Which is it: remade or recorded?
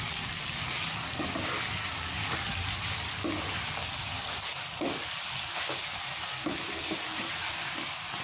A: recorded